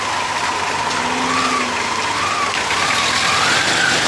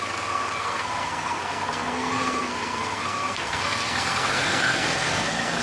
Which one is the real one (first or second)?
first